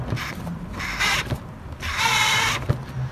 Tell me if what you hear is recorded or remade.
recorded